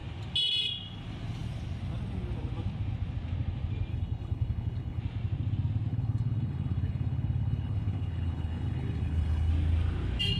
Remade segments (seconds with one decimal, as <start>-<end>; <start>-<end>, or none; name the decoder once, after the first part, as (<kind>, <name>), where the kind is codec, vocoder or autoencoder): 3.9-5.0 (codec, HILCodec); 5.9-9.5